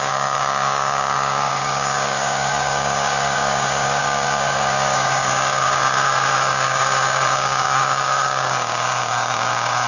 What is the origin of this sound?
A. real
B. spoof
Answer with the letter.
B